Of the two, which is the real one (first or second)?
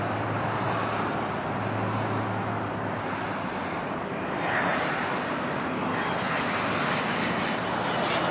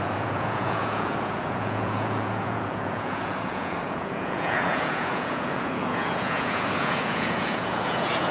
first